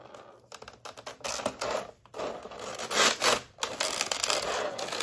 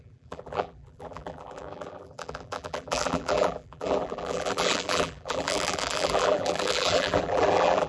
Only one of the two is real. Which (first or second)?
first